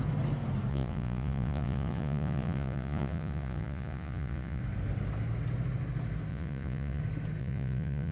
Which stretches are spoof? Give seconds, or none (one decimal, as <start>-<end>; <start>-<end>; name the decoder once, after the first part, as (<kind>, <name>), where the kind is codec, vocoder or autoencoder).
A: 0.7-4.6 (vocoder, Vocos); 6.3-7.0; 7.4-8.1